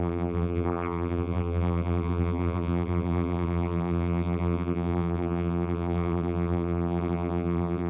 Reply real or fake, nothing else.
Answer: fake